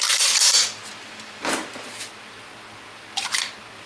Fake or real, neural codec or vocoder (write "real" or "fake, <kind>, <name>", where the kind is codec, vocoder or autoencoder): real